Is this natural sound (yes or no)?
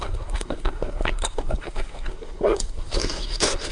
no